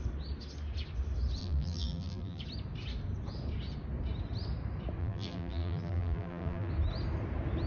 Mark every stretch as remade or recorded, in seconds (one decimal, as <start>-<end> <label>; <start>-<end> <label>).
0.0-1.4 recorded; 1.4-2.4 remade; 2.4-5.0 recorded; 5.0-6.7 remade; 6.7-7.7 recorded